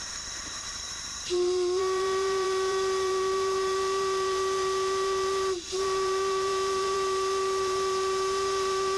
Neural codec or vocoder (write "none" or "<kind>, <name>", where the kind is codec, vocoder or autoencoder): vocoder, BigVGAN v2